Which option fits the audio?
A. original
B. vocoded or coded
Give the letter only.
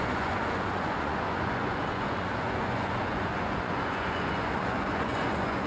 B